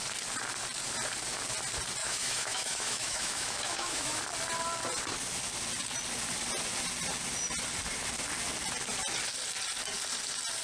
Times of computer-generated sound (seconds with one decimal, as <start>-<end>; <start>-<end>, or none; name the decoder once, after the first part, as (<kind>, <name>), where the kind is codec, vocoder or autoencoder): 2.0-4.2 (autoencoder, DAC-VAE)